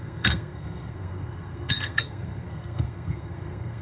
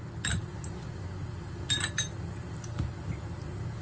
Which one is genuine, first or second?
second